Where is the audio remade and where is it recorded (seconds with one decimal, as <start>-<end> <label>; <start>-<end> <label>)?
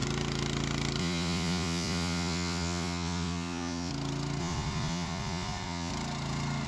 0.0-1.0 recorded; 1.0-3.9 remade; 3.9-4.4 recorded; 4.4-5.9 remade; 5.9-6.7 recorded